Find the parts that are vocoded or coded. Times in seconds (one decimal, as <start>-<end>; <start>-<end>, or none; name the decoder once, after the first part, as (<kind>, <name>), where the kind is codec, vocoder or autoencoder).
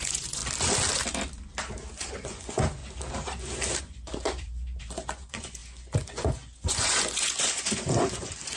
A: 0.0-0.4 (vocoder, Vocos); 2.1-2.8; 3.8-8.6